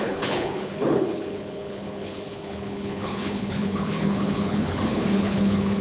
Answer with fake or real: fake